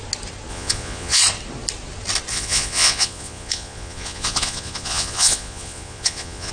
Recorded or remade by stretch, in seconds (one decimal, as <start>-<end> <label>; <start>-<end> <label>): 0.0-0.5 recorded; 0.5-1.2 remade; 1.2-2.3 recorded; 2.3-6.5 remade